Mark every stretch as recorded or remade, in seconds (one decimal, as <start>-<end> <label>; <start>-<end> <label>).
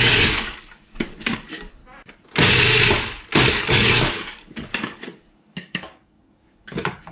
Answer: 0.0-1.8 remade; 1.8-3.5 recorded; 3.5-7.1 remade